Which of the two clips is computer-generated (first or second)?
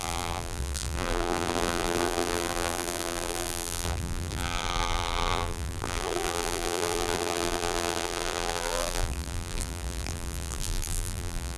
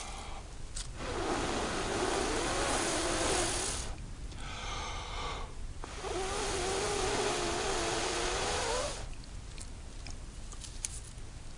first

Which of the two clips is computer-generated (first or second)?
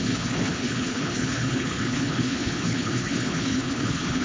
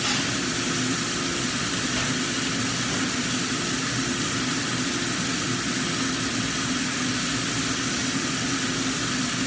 first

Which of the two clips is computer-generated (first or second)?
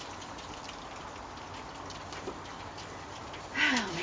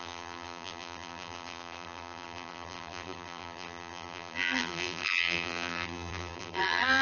second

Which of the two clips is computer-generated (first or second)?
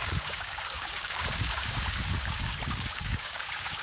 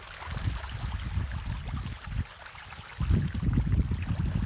first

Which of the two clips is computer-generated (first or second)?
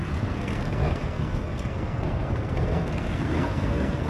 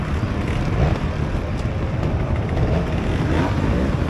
first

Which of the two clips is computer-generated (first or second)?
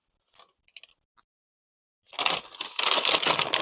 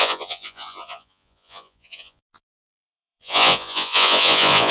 second